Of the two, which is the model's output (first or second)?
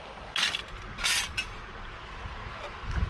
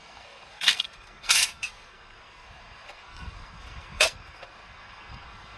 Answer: second